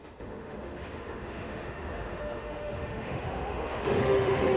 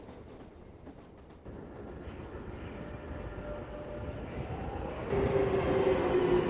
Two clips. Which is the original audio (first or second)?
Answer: second